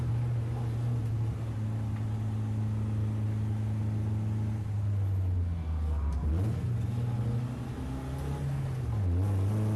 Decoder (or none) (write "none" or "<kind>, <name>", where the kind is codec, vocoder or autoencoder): none